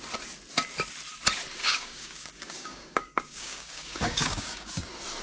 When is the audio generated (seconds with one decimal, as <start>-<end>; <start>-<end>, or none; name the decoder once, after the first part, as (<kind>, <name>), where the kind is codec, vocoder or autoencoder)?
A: 1.6-4.7 (codec, DAC)